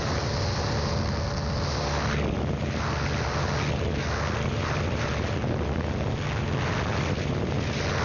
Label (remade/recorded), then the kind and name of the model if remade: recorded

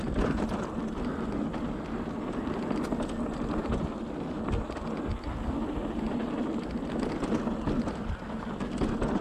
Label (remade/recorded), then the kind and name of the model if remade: recorded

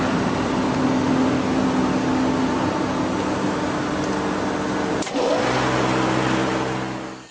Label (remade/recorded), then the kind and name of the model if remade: recorded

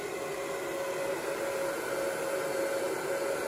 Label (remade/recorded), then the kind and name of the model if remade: recorded